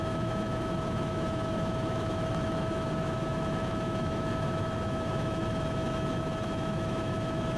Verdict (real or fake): fake